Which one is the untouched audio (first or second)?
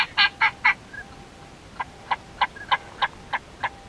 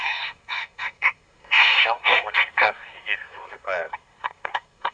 first